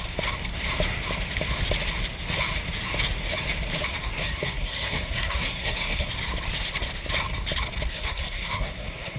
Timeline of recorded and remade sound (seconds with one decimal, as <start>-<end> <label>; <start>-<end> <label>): 0.0-4.2 recorded; 4.2-6.1 remade; 6.1-7.9 recorded; 7.9-9.2 remade